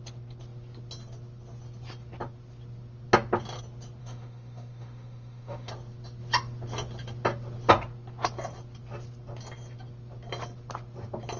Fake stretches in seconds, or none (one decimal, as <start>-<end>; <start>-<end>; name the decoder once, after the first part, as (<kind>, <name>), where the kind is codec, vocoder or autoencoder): 4.0-5.7 (autoencoder, DAC-VAE)